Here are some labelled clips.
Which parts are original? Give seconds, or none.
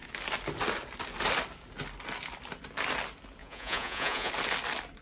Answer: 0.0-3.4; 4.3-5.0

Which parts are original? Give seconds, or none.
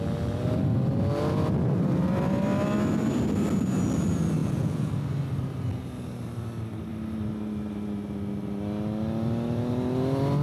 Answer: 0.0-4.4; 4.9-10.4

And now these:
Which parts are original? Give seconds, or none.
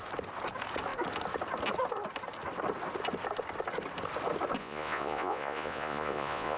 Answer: 0.0-4.6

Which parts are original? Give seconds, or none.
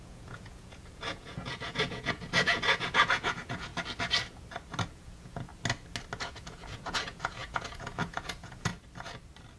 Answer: 3.7-4.9; 5.5-6.2; 8.7-9.6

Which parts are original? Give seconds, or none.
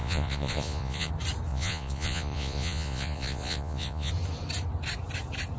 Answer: 1.1-1.5; 4.1-5.6